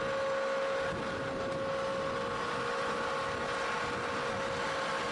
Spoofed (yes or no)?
no